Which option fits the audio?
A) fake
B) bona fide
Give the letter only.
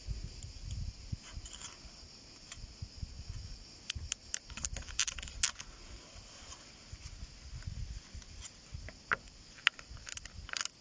B